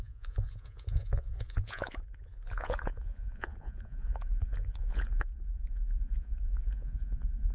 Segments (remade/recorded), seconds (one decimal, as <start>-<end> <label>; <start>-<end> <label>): 0.0-7.5 remade